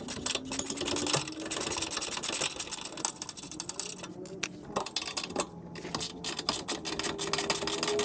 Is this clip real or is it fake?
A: real